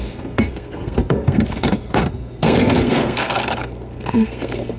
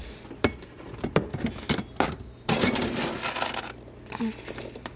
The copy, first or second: first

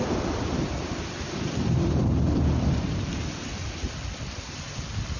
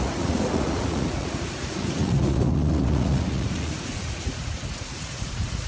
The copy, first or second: second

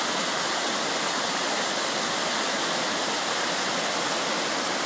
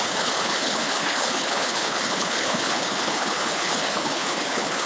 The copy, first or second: second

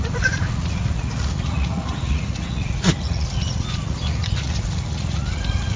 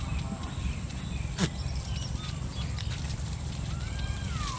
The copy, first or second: first